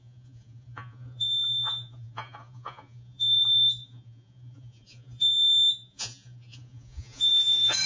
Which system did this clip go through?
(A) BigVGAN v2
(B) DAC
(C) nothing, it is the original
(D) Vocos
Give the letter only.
D